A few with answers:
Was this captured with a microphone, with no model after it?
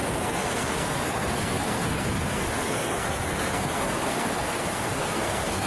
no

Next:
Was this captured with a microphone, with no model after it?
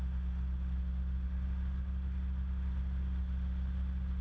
yes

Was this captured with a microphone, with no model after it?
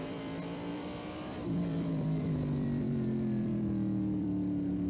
no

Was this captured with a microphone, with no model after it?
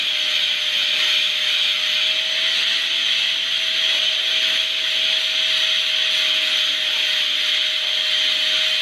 yes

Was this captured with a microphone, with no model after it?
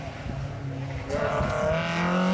yes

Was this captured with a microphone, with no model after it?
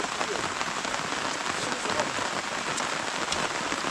yes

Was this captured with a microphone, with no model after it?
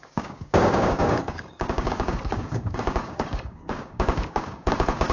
no